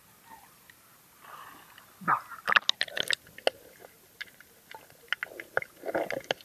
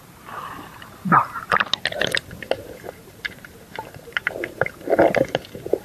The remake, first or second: second